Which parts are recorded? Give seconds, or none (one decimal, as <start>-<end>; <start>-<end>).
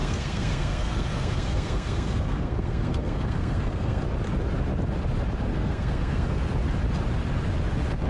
4.0-5.5; 6.4-8.1